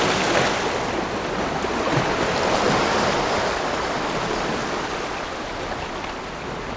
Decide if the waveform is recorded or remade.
recorded